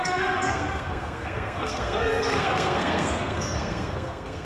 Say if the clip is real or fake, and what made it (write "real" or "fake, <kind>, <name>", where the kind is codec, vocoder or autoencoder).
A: fake, codec, SNAC